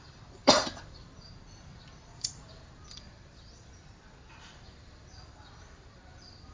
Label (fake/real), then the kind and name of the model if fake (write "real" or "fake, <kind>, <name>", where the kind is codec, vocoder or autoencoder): fake, vocoder, BigVGAN v2